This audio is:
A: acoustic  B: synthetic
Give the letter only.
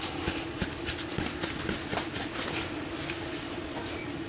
A